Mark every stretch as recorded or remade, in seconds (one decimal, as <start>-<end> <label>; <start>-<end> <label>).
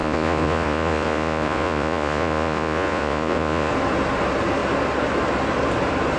0.0-3.7 remade; 3.7-6.2 recorded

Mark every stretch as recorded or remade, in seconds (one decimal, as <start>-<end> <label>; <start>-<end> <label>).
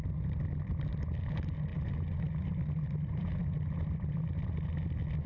0.0-5.3 recorded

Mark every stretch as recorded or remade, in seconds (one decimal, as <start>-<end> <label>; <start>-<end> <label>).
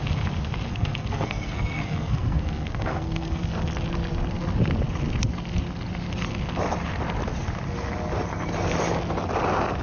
0.0-0.7 recorded; 0.7-3.4 remade; 3.4-9.8 recorded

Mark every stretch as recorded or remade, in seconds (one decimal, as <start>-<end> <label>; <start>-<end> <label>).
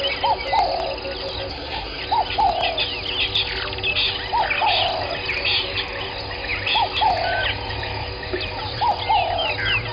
0.0-1.5 recorded; 1.5-2.0 remade; 2.0-9.9 recorded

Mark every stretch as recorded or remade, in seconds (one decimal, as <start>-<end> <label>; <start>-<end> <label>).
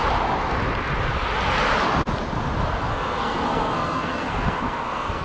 0.0-2.8 recorded; 2.8-5.2 remade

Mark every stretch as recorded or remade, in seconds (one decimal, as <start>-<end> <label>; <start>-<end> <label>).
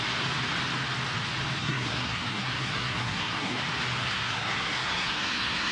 0.0-1.6 recorded; 1.6-3.6 remade; 3.6-4.0 recorded; 4.0-5.7 remade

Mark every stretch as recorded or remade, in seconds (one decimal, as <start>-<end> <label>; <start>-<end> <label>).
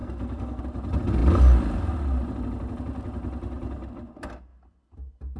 0.0-0.6 remade; 0.6-5.4 recorded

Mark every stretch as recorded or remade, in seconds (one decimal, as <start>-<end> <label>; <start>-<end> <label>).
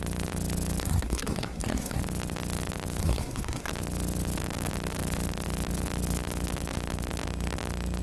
0.0-0.8 recorded; 0.8-2.0 remade; 2.0-3.0 recorded; 3.0-3.7 remade; 3.7-8.0 recorded